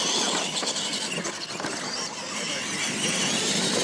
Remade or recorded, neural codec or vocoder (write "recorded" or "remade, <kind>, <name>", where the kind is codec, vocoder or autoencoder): recorded